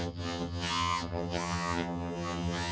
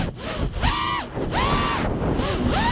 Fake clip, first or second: first